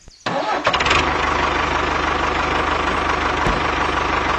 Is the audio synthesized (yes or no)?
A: no